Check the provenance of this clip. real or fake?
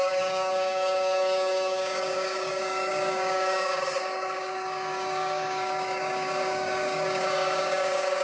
fake